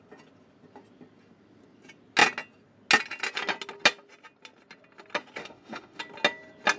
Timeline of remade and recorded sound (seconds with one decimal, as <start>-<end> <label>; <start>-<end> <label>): 0.0-5.4 recorded; 5.4-6.0 remade; 6.0-6.8 recorded